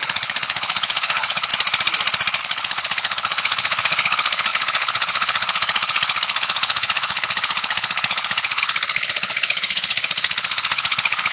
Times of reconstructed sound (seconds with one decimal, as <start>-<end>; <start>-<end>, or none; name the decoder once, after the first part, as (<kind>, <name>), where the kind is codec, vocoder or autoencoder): 0.0-1.5 (codec, HILCodec); 2.4-11.3

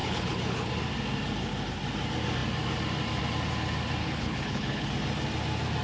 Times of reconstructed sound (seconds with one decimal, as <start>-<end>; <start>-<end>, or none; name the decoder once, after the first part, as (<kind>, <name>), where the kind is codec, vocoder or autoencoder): 0.0-0.7 (codec, HILCodec); 4.0-4.9

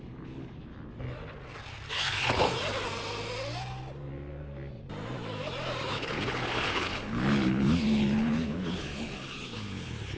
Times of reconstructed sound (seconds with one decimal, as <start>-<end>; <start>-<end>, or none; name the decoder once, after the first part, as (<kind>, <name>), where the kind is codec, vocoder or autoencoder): 0.0-0.7 (codec, HILCodec); 1.9-2.5; 5.9-10.2

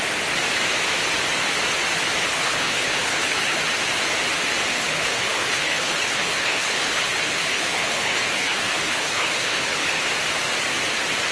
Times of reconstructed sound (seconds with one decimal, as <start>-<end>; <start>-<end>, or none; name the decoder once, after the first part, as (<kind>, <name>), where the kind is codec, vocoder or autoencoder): 2.3-3.6 (codec, HILCodec); 4.7-10.0